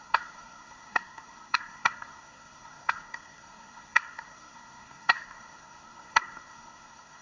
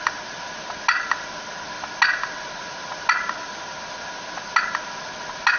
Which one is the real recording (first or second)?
second